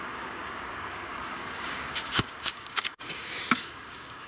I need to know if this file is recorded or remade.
remade